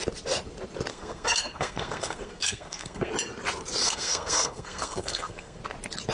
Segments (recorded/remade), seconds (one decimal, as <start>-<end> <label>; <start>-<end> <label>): 0.0-0.9 recorded; 0.9-3.1 remade; 3.1-3.8 recorded; 3.8-5.6 remade; 5.6-6.1 recorded